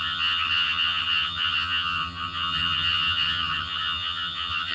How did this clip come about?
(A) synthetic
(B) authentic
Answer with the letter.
A